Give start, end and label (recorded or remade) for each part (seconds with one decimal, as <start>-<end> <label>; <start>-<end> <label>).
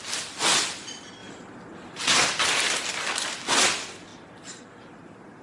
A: 0.0-1.2 remade; 1.2-2.1 recorded; 2.1-4.1 remade; 4.1-4.6 recorded; 4.6-5.4 remade